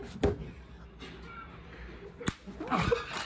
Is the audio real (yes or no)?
yes